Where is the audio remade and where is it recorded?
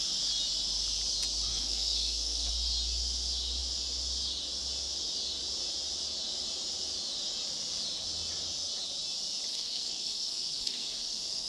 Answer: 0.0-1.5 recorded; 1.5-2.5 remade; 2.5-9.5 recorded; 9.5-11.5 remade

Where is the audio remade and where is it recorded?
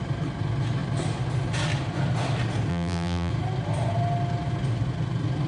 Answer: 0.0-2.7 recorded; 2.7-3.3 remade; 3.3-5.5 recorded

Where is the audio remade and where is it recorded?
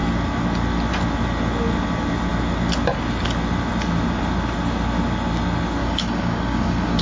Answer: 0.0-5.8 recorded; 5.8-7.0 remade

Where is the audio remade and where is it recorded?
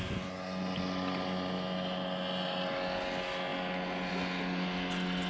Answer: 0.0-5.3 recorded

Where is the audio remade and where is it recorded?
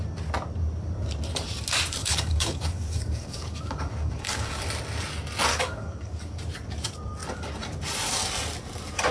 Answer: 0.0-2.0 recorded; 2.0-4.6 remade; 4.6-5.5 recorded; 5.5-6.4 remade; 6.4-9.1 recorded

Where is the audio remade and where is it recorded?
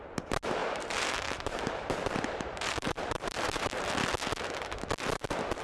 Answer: 0.0-0.6 recorded; 0.6-3.9 remade; 3.9-5.6 recorded